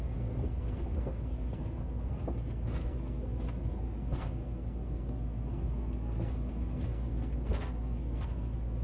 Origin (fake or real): fake